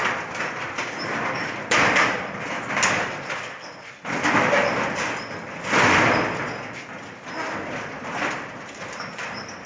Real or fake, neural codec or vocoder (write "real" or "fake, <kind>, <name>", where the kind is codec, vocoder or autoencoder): real